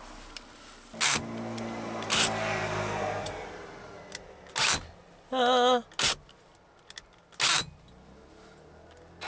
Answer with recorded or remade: recorded